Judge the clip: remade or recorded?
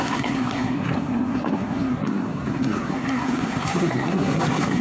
remade